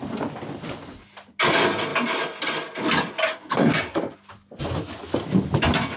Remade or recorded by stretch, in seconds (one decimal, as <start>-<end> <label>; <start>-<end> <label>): 0.0-3.3 recorded; 3.3-4.1 remade; 4.1-6.0 recorded